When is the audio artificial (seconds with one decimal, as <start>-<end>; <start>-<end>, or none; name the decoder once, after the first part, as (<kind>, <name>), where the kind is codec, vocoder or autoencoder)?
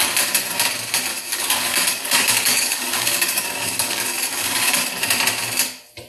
1.1-4.8 (codec, DAC)